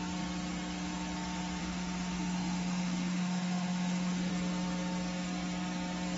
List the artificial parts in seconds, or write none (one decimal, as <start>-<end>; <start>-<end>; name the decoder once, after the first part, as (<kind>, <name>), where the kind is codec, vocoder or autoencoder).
1.6-4.3 (autoencoder, DAC-VAE)